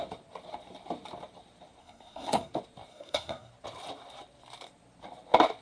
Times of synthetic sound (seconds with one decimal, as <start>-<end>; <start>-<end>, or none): 1.8-2.5; 2.9-3.5